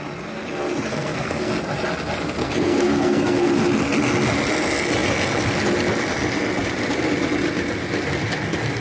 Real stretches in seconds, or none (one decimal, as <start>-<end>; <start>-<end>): 0.0-0.9; 1.5-2.4; 3.5-8.8